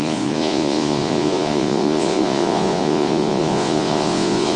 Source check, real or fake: fake